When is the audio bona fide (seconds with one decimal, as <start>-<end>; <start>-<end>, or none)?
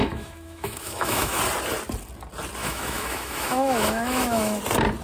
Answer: 1.4-2.6; 4.6-5.0